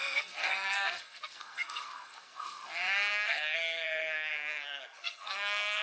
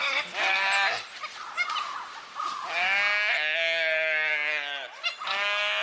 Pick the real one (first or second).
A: second